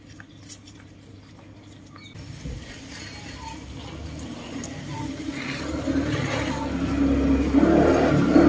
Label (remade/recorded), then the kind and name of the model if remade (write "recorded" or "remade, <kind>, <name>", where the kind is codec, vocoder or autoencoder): recorded